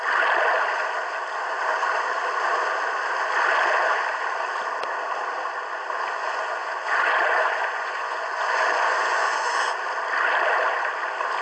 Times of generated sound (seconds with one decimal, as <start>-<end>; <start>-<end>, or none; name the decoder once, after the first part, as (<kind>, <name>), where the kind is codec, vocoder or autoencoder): 6.2-9.7 (vocoder, Vocos)